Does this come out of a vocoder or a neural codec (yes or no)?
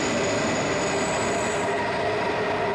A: no